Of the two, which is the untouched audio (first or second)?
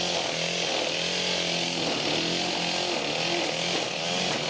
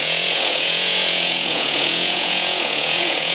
first